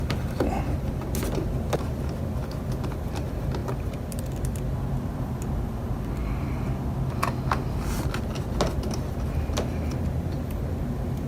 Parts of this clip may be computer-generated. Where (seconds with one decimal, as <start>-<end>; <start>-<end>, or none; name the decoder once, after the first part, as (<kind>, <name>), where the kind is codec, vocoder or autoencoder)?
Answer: none